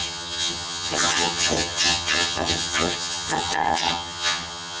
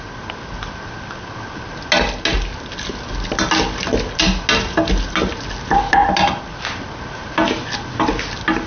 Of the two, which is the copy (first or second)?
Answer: first